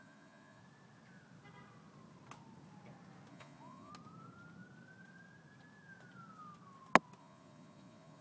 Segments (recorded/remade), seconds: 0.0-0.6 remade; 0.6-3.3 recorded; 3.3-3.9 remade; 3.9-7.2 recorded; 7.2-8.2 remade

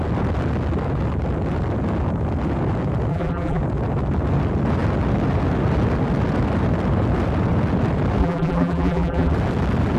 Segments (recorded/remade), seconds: 0.0-3.1 recorded; 3.1-3.6 remade; 3.6-8.2 recorded; 8.2-9.3 remade; 9.3-10.0 recorded

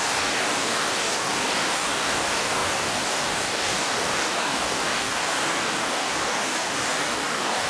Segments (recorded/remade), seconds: 0.0-7.7 remade

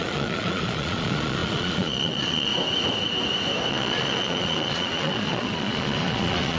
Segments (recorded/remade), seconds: 0.0-2.5 remade; 2.5-3.7 recorded; 3.7-6.6 remade

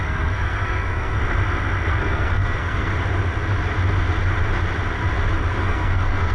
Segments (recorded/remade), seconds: 0.0-1.2 remade; 1.2-1.9 recorded; 1.9-2.9 remade; 2.9-5.6 recorded; 5.6-6.3 remade